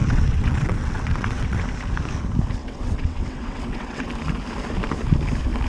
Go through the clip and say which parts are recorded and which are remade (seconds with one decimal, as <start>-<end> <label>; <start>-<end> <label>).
0.0-1.6 remade; 1.6-2.6 recorded; 2.6-4.1 remade; 4.1-5.7 recorded